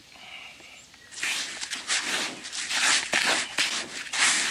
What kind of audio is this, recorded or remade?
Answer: recorded